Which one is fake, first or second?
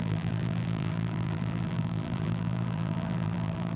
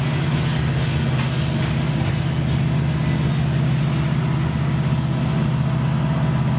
first